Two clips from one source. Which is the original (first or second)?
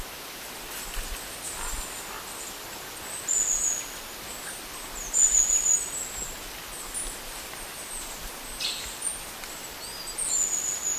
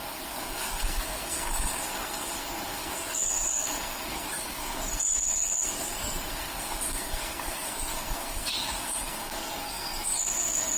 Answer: first